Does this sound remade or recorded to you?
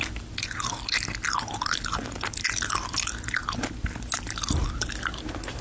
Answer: recorded